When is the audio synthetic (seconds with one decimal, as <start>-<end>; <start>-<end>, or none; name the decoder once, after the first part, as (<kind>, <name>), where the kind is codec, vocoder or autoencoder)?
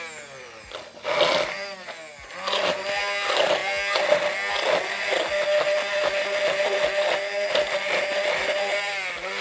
none